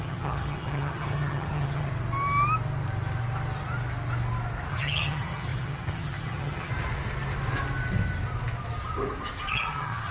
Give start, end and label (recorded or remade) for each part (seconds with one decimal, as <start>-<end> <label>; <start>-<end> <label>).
0.0-1.9 remade; 1.9-4.7 recorded; 4.7-6.7 remade; 6.7-9.5 recorded; 9.5-10.1 remade

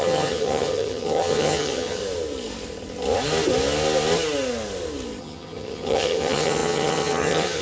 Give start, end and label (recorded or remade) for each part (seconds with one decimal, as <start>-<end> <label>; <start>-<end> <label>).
0.0-2.0 remade; 2.0-5.2 recorded; 5.2-7.6 remade

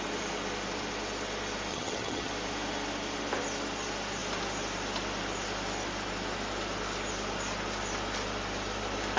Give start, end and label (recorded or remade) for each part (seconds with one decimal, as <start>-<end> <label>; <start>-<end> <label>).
0.0-1.7 recorded; 1.7-2.3 remade; 2.3-9.2 recorded